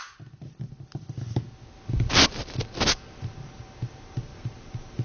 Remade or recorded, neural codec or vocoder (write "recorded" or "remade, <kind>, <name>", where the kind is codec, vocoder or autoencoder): recorded